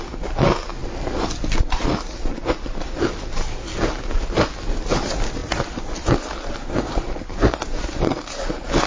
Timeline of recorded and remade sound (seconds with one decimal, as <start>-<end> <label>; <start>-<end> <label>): 0.0-8.9 recorded